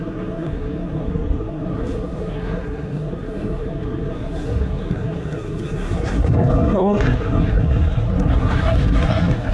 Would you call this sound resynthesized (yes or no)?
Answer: yes